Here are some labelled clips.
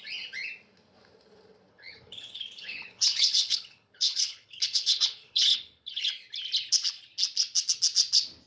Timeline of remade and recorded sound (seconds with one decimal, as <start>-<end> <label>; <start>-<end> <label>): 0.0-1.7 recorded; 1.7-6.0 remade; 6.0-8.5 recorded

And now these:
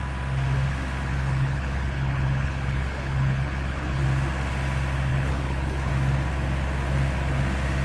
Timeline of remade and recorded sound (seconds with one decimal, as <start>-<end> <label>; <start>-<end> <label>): 0.0-1.1 recorded; 1.1-4.0 remade; 4.0-5.1 recorded; 5.1-5.9 remade; 5.9-7.8 recorded

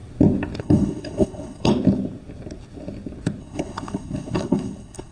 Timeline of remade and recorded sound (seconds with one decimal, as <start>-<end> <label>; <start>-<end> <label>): 0.0-0.6 recorded; 0.6-1.7 remade; 1.7-3.4 recorded; 3.4-5.1 remade

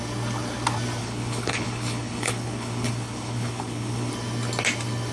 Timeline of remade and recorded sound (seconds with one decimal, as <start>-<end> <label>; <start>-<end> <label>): 0.0-1.0 recorded; 1.0-4.1 remade; 4.1-5.1 recorded

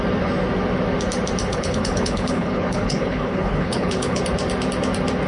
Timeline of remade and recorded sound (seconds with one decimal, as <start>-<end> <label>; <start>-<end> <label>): 0.0-1.5 recorded; 1.5-4.2 remade; 4.2-5.3 recorded